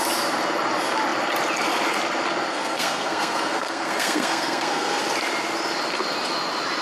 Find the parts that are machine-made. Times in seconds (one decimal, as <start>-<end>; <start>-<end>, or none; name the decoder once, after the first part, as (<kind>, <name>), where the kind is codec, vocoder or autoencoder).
2.5-5.0 (codec, SNAC)